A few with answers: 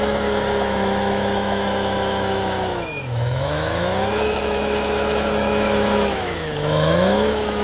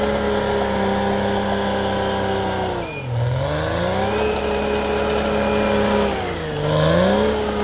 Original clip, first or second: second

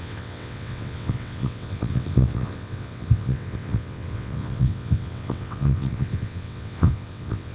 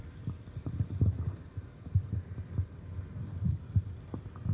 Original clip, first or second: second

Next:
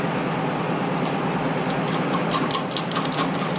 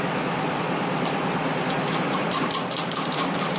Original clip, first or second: first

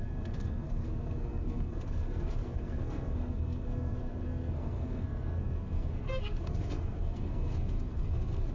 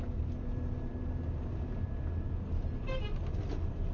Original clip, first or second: second